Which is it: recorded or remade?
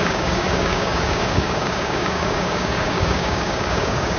remade